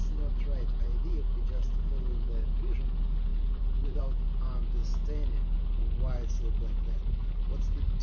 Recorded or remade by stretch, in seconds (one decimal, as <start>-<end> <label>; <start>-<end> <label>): 0.0-3.3 recorded; 3.3-4.0 remade; 4.0-8.0 recorded